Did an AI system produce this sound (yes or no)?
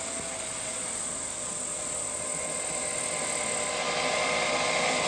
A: no